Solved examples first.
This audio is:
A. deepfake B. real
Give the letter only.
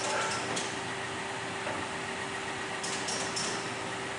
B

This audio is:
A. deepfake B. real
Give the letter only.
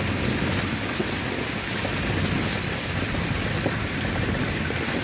B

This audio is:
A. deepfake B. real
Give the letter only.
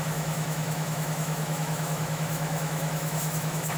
A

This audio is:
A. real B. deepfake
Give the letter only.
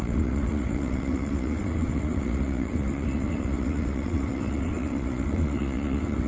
B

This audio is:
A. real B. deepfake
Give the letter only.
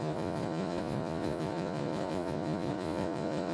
B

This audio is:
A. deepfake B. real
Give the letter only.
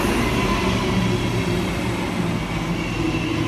B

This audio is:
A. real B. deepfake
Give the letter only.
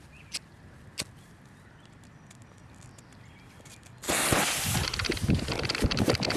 A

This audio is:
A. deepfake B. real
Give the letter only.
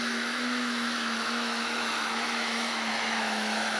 A